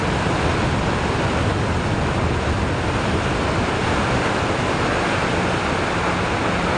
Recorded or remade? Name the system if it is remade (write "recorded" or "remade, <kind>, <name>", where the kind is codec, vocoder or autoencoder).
recorded